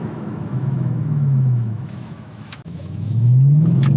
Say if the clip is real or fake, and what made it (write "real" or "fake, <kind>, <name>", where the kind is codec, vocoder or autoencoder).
fake, autoencoder, DAC-VAE